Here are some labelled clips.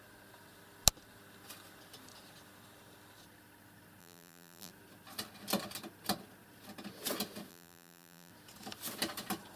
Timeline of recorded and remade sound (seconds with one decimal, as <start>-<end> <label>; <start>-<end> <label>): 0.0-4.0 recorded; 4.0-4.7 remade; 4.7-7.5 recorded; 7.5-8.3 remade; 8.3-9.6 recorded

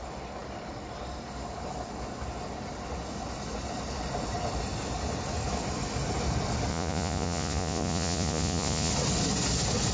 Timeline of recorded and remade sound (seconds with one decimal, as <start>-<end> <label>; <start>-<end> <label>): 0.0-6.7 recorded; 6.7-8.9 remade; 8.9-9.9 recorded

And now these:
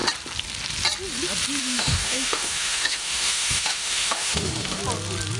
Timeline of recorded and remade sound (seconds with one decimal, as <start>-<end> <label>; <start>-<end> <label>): 0.0-1.6 recorded; 1.6-4.8 remade; 4.8-5.4 recorded